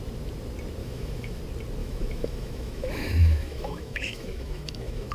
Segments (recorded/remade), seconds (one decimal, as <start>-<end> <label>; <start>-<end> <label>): 0.0-0.8 recorded; 0.8-1.4 remade; 1.4-1.8 recorded; 1.8-5.1 remade